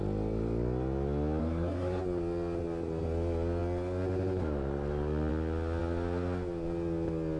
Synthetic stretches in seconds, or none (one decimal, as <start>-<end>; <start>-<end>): 1.4-2.0